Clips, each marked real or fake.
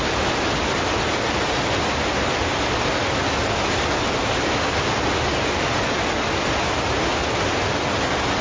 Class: real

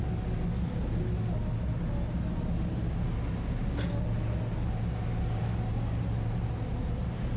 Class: real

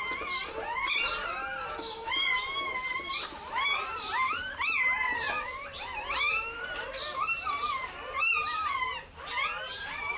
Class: fake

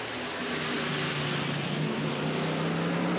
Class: real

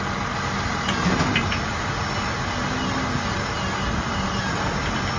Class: real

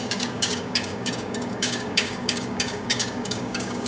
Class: fake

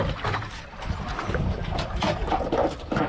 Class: real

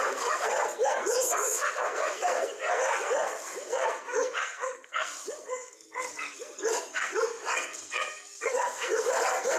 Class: fake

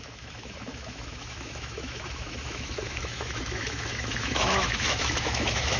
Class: fake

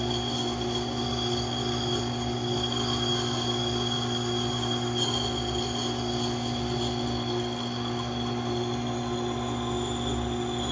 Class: real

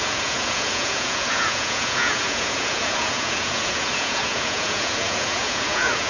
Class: fake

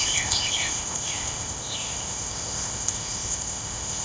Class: fake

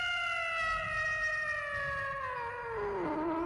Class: real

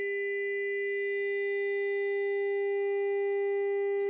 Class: real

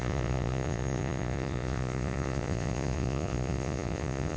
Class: fake